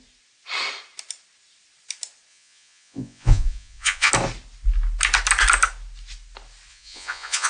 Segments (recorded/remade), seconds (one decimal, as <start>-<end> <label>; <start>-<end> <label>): 0.0-2.3 recorded; 2.3-4.1 remade; 4.1-6.7 recorded; 6.7-7.5 remade